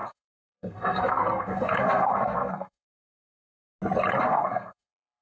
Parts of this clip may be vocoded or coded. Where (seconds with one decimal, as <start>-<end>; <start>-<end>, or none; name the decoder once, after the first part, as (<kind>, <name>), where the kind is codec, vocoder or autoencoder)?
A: 0.0-3.2 (codec, SNAC); 4.2-5.2